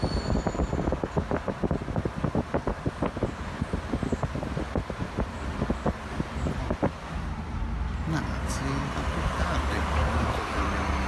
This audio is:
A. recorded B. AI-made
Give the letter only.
A